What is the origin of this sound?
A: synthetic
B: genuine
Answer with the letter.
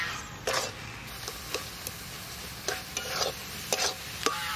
B